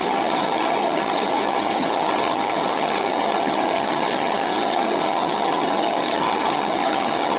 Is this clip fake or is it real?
fake